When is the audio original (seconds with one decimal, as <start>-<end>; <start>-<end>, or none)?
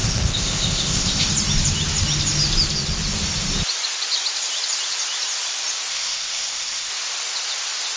1.3-5.9; 6.9-8.0